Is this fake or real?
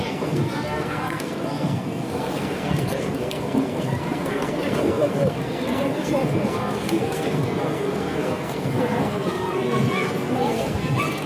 fake